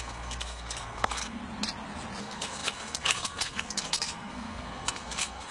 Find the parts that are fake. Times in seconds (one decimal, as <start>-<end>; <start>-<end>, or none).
0.0-1.4; 2.2-5.5